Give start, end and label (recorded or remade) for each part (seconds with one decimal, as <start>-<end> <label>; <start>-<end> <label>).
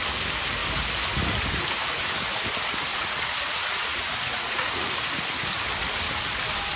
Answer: 0.0-2.9 recorded; 2.9-4.9 remade; 4.9-6.8 recorded